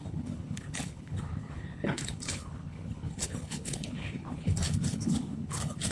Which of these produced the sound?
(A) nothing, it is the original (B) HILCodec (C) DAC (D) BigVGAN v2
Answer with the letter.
B